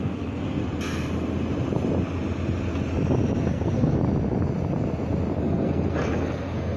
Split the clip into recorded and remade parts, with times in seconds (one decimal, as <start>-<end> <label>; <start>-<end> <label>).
0.0-0.6 remade; 0.6-3.4 recorded; 3.4-4.0 remade; 4.0-5.4 recorded; 5.4-6.8 remade